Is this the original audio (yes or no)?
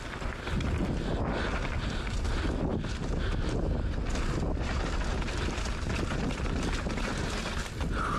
yes